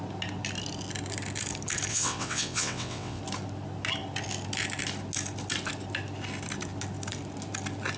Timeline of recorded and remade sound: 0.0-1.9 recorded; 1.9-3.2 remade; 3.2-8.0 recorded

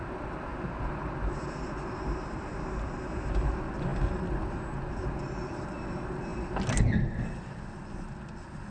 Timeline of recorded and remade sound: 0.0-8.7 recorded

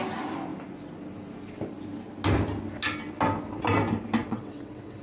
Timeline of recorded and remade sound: 0.0-4.2 recorded; 4.2-5.0 remade

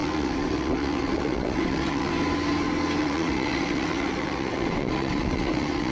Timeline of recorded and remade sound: 0.0-2.1 remade; 2.1-3.0 recorded; 3.0-5.9 remade

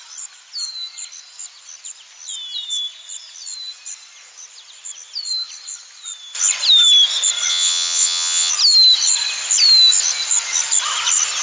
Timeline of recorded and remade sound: 0.0-7.5 recorded; 7.5-8.5 remade; 8.5-11.4 recorded

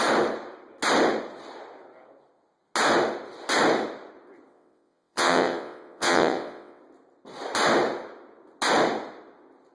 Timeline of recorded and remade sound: 0.0-4.5 recorded; 4.5-6.8 remade; 6.8-9.7 recorded

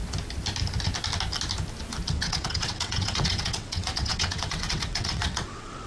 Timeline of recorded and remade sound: 0.0-2.1 recorded; 2.1-5.9 remade